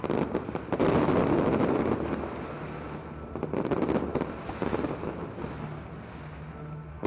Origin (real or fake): real